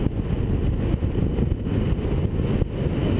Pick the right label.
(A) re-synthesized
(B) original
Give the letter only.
B